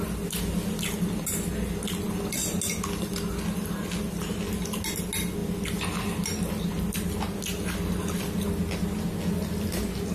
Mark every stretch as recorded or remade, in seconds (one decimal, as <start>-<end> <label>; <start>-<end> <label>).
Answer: 0.0-10.1 recorded